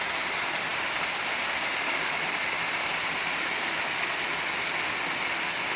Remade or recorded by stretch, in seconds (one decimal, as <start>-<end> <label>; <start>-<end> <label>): 0.0-5.8 recorded